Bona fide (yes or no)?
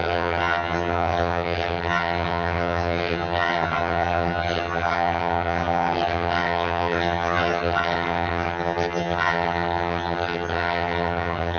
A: no